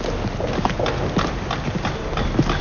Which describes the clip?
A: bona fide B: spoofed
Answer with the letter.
A